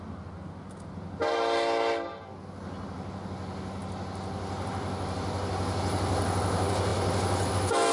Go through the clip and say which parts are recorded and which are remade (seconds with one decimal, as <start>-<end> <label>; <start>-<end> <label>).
0.0-7.9 recorded